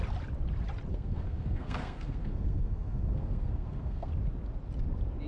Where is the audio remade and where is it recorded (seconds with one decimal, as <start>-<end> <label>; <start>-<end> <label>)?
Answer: 0.0-0.9 recorded; 0.9-4.1 remade; 4.1-5.3 recorded